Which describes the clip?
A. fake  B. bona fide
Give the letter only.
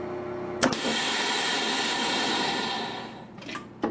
B